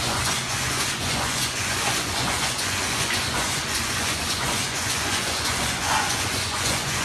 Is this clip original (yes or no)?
no